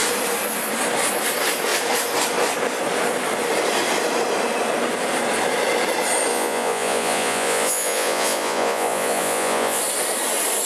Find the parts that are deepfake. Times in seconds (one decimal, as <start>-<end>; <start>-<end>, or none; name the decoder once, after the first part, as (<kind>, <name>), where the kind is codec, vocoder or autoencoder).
6.3-9.8 (vocoder, Vocos)